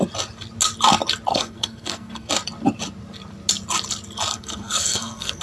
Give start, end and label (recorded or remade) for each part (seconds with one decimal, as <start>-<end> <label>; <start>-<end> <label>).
0.0-1.3 recorded; 1.3-2.3 remade; 2.3-4.3 recorded; 4.3-5.4 remade

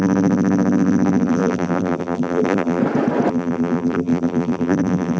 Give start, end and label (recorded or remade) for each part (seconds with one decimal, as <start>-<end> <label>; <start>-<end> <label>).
0.0-2.8 remade; 2.8-3.3 recorded; 3.3-5.2 remade

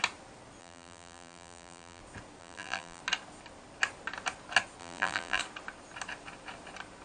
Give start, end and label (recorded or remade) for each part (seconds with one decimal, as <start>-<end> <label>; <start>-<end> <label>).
0.0-0.6 recorded; 0.6-2.0 remade; 2.0-2.4 recorded; 2.4-3.0 remade; 3.0-4.8 recorded; 4.8-5.4 remade; 5.4-7.0 recorded

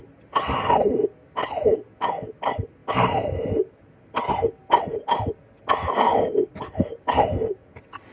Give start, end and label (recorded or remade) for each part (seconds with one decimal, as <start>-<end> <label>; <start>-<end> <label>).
0.0-2.8 recorded; 2.8-3.4 remade; 3.4-8.1 recorded